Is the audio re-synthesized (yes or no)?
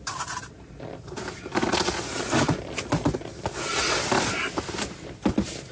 no